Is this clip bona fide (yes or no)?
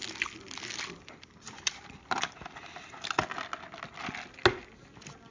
yes